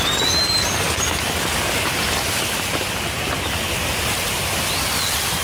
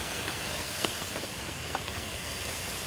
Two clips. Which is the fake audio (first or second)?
second